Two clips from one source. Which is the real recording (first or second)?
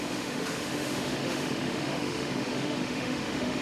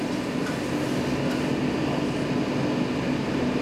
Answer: second